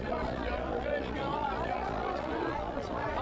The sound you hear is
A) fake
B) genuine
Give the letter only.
A